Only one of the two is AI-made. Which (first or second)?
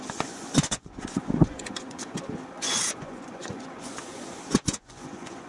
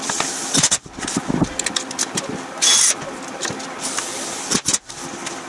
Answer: first